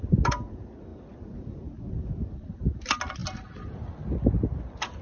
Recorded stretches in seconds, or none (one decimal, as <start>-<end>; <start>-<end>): 0.0-5.0